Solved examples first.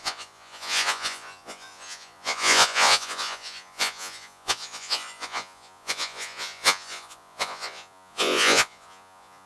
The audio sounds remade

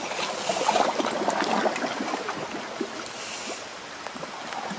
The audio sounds recorded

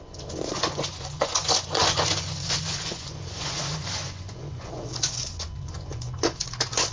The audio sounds remade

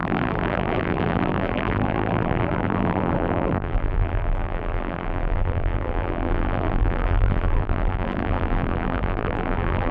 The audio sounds remade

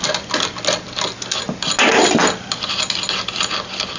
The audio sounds recorded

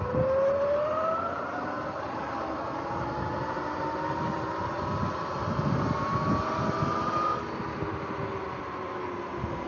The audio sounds recorded